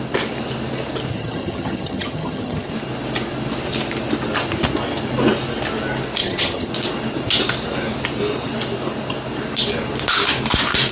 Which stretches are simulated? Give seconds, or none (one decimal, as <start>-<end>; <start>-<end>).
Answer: 1.1-2.7; 6.2-6.7